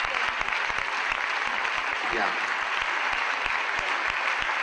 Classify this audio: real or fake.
real